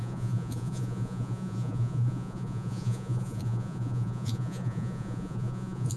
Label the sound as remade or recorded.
remade